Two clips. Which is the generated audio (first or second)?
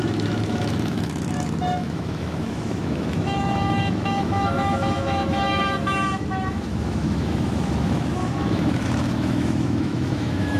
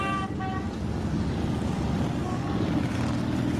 first